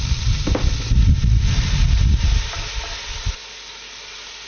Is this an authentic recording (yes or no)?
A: yes